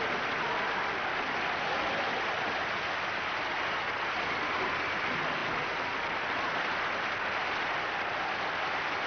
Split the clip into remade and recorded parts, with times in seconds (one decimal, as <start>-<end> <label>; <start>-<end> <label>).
0.0-9.1 recorded